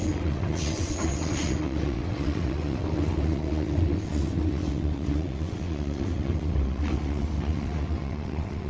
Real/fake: fake